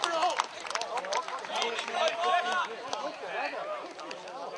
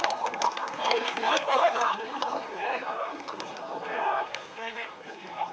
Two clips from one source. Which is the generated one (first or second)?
second